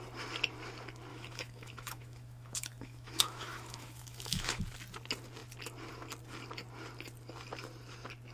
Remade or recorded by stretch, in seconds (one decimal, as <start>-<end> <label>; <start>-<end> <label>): 0.0-1.1 recorded; 1.1-4.6 remade; 4.6-8.3 recorded